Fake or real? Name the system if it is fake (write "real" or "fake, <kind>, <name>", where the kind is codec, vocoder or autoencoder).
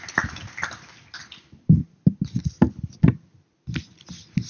real